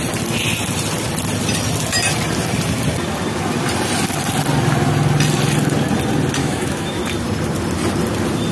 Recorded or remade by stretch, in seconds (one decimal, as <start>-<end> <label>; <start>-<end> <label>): 0.0-6.4 recorded; 6.4-7.0 remade; 7.0-8.5 recorded